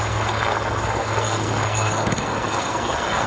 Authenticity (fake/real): fake